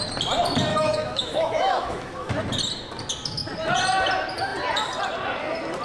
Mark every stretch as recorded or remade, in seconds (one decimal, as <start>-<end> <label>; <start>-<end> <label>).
0.0-0.7 recorded; 0.7-2.3 remade; 2.3-5.8 recorded